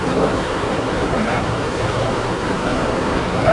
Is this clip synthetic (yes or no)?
yes